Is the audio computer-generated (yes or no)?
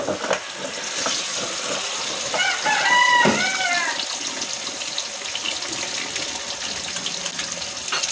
no